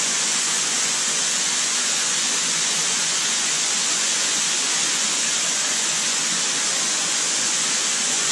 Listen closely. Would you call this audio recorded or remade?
remade